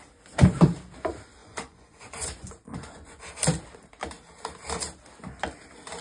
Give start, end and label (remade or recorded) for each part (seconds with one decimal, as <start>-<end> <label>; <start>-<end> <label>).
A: 0.0-1.4 recorded; 1.4-3.2 remade; 3.2-6.0 recorded